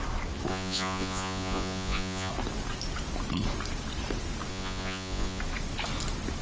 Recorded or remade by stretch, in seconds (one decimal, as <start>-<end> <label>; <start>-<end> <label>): 0.0-0.5 recorded; 0.5-2.3 remade; 2.3-4.5 recorded; 4.5-5.4 remade; 5.4-6.4 recorded